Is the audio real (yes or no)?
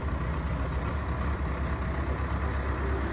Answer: yes